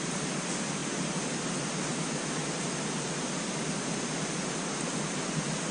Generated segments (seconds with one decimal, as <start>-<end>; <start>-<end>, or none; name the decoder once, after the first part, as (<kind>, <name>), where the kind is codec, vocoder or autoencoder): none